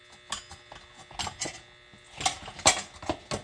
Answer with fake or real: real